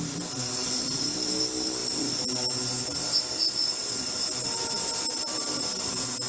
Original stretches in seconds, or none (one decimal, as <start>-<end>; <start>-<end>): 0.0-6.3